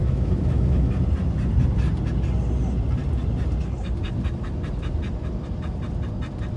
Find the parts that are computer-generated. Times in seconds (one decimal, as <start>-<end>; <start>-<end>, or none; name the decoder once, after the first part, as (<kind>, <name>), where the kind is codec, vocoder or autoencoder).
0.0-0.9 (autoencoder, DAC-VAE)